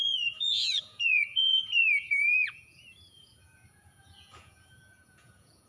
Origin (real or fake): fake